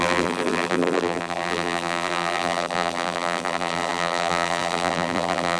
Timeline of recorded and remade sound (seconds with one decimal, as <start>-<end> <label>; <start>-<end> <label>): 0.0-5.6 remade